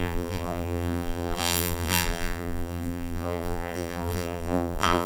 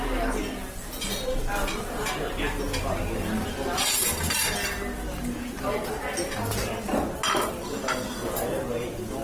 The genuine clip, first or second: second